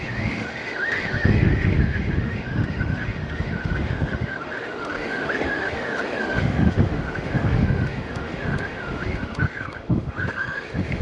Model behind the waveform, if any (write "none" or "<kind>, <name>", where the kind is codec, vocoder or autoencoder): autoencoder, DAC-VAE